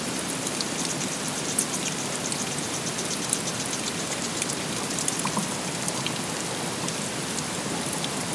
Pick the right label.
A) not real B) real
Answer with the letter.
A